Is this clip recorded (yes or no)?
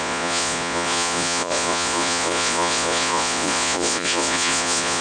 no